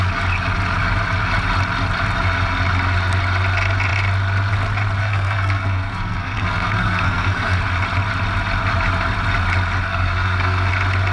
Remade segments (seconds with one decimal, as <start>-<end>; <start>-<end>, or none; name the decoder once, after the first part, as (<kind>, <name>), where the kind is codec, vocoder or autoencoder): 5.0-7.6 (codec, SNAC); 9.9-10.7